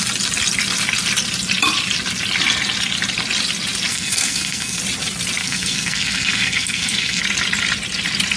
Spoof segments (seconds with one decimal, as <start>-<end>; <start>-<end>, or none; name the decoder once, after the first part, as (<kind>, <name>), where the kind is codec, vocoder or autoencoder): 3.9-4.8 (codec, SNAC); 5.4-7.2